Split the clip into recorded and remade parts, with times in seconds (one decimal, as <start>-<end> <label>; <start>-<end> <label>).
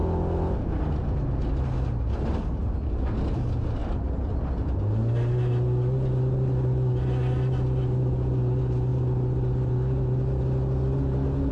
0.0-11.5 recorded